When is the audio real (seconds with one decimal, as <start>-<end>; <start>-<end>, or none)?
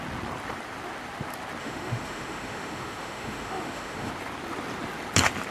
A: 0.0-1.6; 4.1-5.5